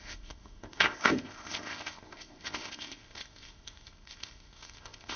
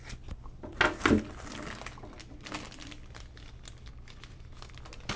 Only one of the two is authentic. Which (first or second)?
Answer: second